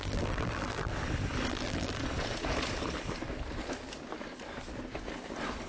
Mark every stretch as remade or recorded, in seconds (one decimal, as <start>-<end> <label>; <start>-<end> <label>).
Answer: 0.0-0.9 remade; 0.9-1.5 recorded; 1.5-2.0 remade; 2.0-5.7 recorded

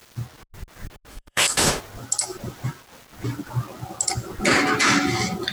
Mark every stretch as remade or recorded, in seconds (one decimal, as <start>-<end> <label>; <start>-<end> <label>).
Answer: 0.0-1.1 recorded; 1.1-1.8 remade; 1.8-5.5 recorded

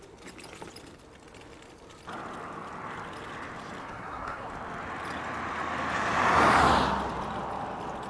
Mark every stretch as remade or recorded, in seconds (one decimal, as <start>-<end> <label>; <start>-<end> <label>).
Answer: 0.0-3.8 recorded; 3.8-4.5 remade; 4.5-8.1 recorded

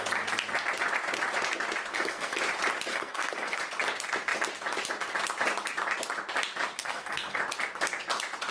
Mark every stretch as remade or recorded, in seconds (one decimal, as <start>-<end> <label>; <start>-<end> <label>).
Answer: 0.0-1.9 recorded; 1.9-2.4 remade; 2.4-2.9 recorded; 2.9-3.6 remade; 3.6-6.8 recorded; 6.8-7.4 remade; 7.4-8.5 recorded